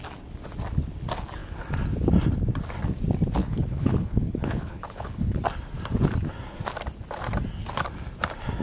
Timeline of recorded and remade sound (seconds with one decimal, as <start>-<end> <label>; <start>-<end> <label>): 0.0-3.4 recorded; 3.4-5.4 remade; 5.4-8.6 recorded